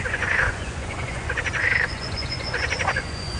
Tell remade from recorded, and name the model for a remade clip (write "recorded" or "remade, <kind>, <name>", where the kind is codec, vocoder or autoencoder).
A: remade, vocoder, Vocos